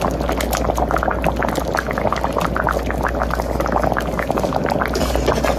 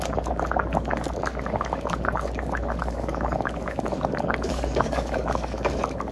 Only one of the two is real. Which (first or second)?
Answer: first